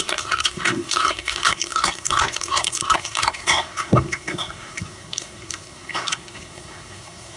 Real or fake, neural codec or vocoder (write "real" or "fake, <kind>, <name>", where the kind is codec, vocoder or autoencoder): fake, codec, SNAC